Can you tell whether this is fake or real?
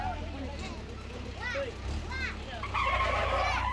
real